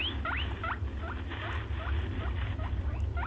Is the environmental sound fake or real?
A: real